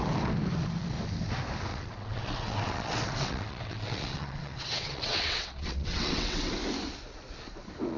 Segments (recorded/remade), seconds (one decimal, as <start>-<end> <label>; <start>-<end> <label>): 0.0-1.7 recorded; 1.7-6.5 remade; 6.5-8.0 recorded